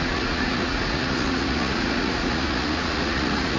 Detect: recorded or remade remade